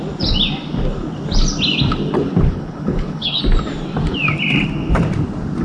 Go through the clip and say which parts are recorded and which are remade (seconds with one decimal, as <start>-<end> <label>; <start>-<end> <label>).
0.0-2.5 recorded; 2.5-3.4 remade; 3.4-5.6 recorded